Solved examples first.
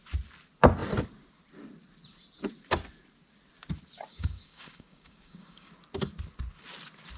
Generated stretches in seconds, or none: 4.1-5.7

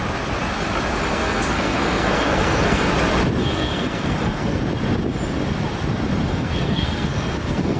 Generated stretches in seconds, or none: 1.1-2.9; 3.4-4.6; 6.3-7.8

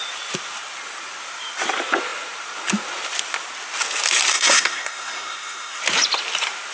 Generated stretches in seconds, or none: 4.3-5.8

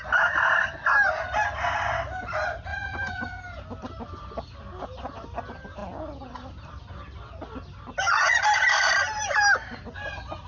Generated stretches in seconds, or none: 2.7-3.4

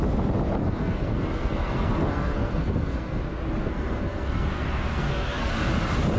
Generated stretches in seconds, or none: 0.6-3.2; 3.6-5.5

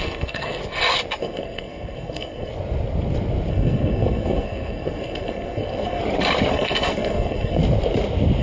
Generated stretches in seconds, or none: 0.0-0.6; 1.2-2.5; 3.5-6.0; 6.5-7.6

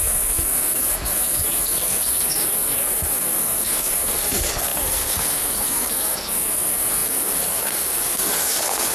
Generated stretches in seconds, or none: 0.0-8.9

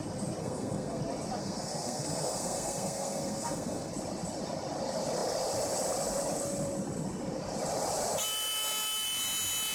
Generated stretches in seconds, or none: 0.4-1.0; 1.4-3.9